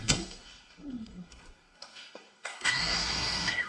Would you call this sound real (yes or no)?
no